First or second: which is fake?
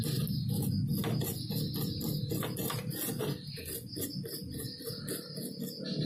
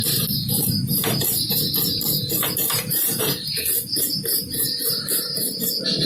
second